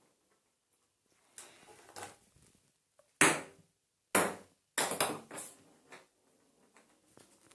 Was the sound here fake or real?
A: real